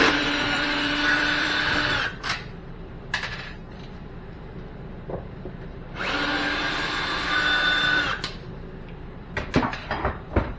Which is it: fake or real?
fake